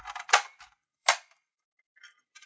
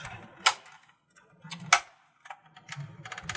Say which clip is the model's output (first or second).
first